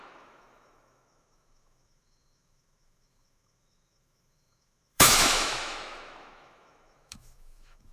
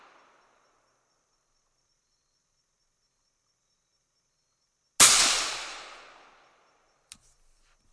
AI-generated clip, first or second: first